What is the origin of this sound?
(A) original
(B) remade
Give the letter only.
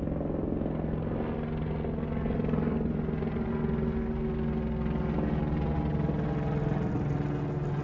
A